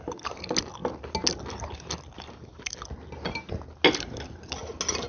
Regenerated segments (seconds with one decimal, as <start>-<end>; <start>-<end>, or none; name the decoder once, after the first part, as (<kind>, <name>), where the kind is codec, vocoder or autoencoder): none